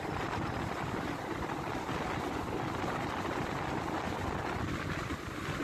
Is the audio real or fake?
real